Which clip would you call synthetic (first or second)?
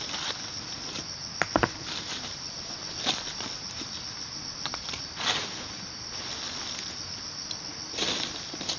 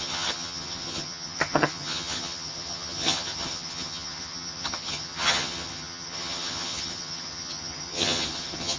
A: second